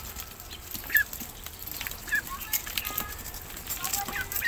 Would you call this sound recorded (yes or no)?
yes